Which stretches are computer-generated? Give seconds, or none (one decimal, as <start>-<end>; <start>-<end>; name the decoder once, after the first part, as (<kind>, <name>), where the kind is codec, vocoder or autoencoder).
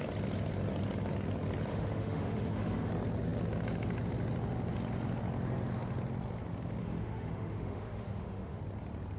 1.7-2.9 (autoencoder, DAC-VAE); 6.8-8.6